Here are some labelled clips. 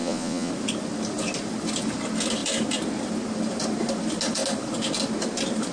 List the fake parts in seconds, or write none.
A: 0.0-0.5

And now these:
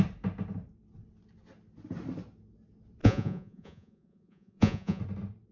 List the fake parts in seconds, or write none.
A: 3.0-5.0

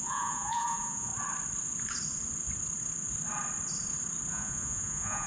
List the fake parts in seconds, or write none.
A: 0.0-1.1; 4.3-5.3

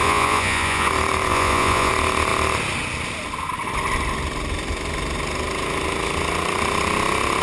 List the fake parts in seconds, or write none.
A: 0.0-0.9; 1.3-1.9

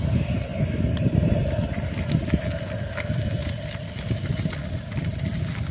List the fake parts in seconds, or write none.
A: none